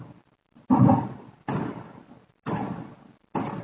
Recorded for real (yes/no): yes